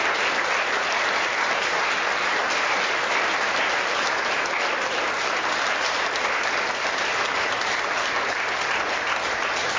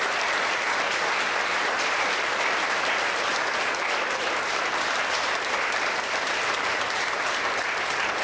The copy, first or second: second